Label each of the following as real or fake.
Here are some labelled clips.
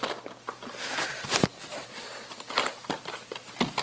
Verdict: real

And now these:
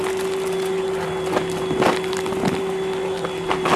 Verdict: real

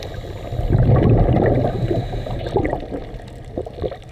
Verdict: real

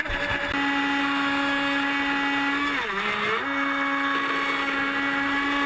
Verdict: real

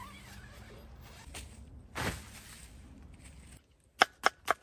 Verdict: real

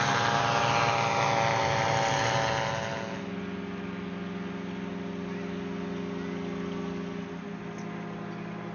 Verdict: real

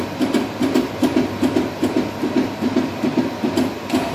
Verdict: real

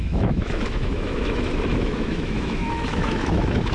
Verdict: fake